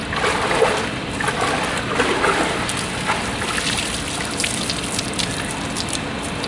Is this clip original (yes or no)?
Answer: yes